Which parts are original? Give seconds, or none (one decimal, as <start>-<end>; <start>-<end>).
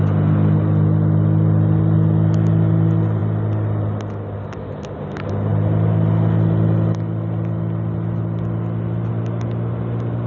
0.0-10.3